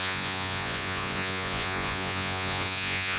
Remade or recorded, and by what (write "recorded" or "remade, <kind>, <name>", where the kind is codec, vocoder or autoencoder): remade, vocoder, Vocos